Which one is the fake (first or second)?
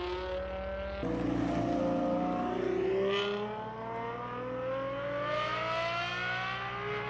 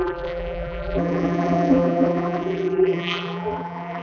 second